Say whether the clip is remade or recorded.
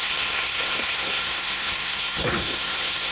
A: remade